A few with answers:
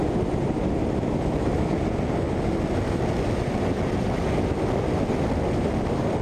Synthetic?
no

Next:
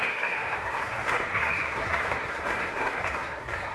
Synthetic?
yes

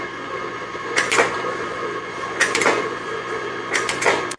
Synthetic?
yes